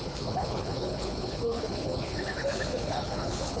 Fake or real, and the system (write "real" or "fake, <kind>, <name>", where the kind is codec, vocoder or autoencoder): fake, codec, HILCodec